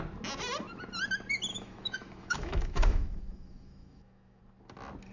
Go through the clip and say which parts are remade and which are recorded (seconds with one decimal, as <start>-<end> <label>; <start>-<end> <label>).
0.0-1.5 recorded; 1.5-4.4 remade; 4.4-5.1 recorded